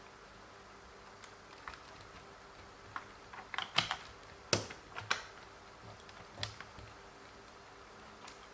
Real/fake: real